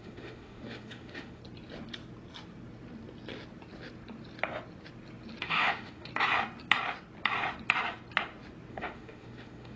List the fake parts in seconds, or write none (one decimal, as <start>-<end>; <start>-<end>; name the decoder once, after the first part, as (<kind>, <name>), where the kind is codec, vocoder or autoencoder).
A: 0.0-1.4 (autoencoder, DAC-VAE); 5.4-6.1; 8.7-9.8